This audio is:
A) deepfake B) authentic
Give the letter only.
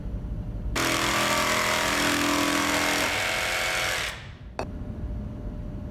B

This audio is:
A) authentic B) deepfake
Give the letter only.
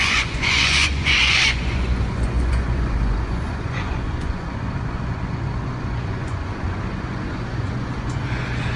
B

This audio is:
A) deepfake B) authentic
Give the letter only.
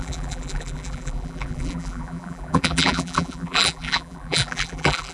A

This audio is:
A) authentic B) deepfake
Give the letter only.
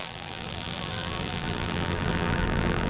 B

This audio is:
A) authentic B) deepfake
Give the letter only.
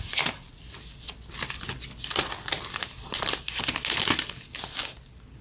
A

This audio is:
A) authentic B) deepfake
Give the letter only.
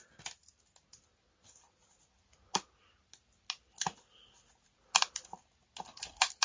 A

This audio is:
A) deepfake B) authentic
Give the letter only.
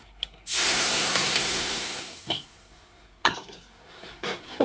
A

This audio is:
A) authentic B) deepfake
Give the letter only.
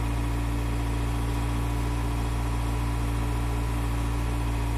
A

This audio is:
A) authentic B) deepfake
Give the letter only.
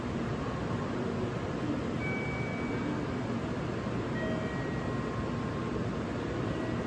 A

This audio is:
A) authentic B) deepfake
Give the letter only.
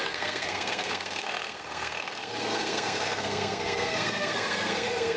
B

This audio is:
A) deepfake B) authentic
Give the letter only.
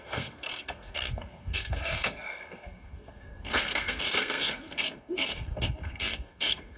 A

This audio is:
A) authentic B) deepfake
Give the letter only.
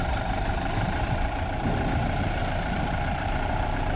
B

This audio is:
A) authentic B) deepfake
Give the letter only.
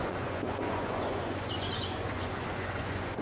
B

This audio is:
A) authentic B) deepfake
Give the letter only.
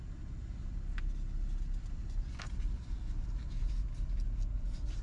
A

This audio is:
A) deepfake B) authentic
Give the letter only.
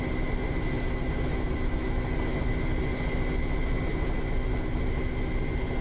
B